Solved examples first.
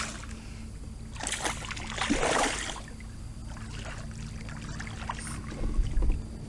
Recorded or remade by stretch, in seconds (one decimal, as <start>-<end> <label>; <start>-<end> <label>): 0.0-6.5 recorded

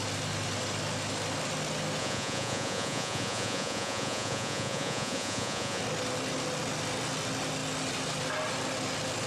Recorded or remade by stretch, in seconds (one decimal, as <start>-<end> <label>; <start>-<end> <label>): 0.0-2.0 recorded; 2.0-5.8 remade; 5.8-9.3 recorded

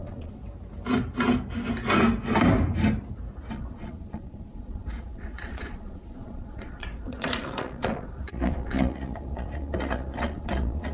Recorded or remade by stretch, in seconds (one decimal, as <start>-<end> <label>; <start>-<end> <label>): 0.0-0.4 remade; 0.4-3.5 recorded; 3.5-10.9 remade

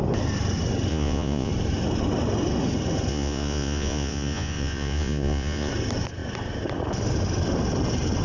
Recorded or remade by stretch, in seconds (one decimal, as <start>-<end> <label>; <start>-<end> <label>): 0.0-0.9 recorded; 0.9-1.5 remade; 1.5-3.1 recorded; 3.1-5.7 remade; 5.7-8.2 recorded

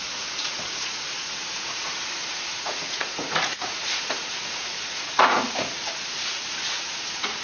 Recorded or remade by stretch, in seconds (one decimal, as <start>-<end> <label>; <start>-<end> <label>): 0.0-7.4 remade

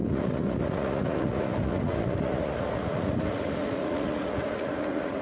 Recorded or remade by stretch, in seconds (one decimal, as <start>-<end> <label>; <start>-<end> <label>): 0.0-5.2 remade

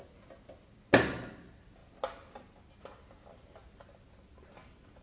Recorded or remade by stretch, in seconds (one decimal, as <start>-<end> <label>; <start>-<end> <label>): 0.0-5.0 recorded